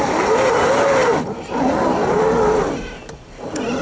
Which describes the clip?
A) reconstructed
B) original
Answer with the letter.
B